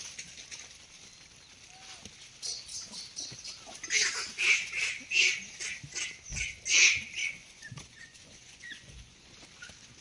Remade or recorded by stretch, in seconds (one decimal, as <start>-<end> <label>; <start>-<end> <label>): 0.0-7.2 recorded; 7.2-9.3 remade; 9.3-10.0 recorded